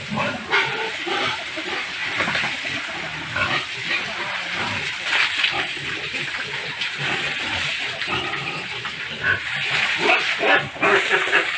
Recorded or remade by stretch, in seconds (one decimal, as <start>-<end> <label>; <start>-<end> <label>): 0.0-2.0 remade; 2.0-2.5 recorded; 2.5-3.1 remade; 3.1-3.9 recorded; 3.9-11.6 remade